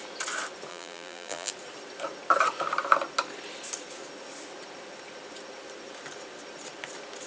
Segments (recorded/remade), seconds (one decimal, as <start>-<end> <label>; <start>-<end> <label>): 0.0-0.7 recorded; 0.7-1.5 remade; 1.5-7.3 recorded

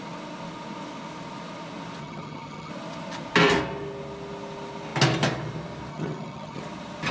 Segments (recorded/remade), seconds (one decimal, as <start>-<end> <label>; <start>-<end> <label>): 0.0-2.0 recorded; 2.0-2.7 remade; 2.7-5.9 recorded; 5.9-6.6 remade; 6.6-7.1 recorded

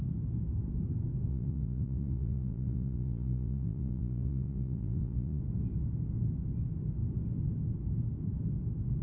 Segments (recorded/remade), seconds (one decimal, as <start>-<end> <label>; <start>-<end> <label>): 0.0-1.3 recorded; 1.3-5.4 remade; 5.4-9.0 recorded

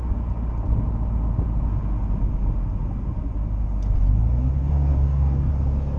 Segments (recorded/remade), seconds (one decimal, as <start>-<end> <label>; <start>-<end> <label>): 0.0-4.6 recorded; 4.6-5.5 remade; 5.5-6.0 recorded

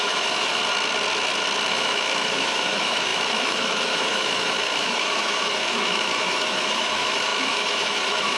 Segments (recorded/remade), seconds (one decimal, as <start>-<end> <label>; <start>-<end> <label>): 0.0-0.6 remade; 0.6-1.7 recorded; 1.7-8.4 remade

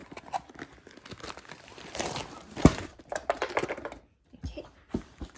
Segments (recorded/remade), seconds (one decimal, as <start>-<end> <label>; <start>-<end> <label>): 0.0-1.3 recorded; 1.3-2.2 remade; 2.2-2.9 recorded; 2.9-3.4 remade; 3.4-5.4 recorded

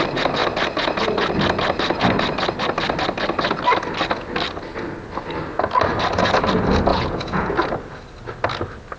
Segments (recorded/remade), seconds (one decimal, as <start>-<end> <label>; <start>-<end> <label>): 0.0-6.9 recorded; 6.9-7.5 remade; 7.5-9.0 recorded

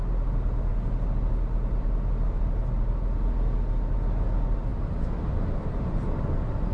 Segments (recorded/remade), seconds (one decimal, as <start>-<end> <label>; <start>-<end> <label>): 0.0-6.7 recorded